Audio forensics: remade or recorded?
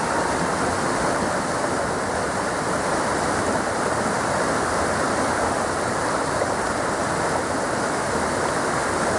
recorded